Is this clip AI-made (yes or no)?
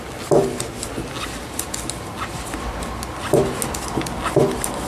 no